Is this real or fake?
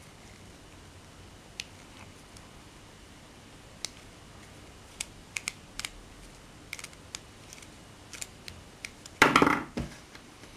real